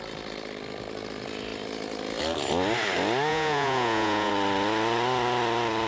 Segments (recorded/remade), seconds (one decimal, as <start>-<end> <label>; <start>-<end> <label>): 0.0-3.3 recorded; 3.3-4.3 remade; 4.3-5.9 recorded